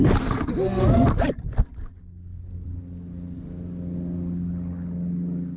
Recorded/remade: recorded